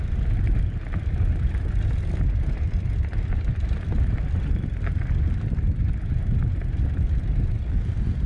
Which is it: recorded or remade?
remade